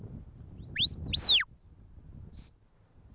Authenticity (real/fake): real